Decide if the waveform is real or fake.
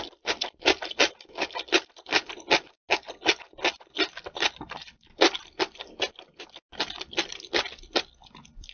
real